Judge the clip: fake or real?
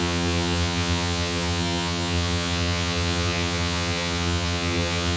fake